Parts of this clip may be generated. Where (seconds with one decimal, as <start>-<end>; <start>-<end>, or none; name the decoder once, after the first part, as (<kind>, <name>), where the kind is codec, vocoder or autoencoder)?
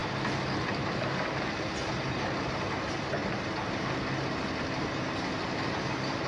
2.7-3.2 (vocoder, BigVGAN v2); 5.6-6.3